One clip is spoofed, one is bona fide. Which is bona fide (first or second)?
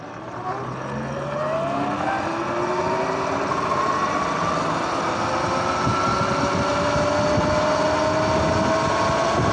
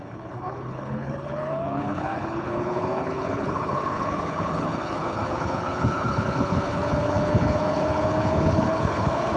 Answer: first